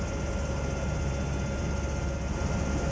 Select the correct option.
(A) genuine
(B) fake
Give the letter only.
A